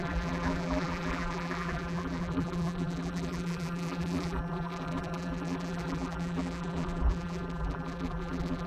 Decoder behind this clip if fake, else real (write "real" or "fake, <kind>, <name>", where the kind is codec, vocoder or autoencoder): fake, vocoder, BigVGAN v2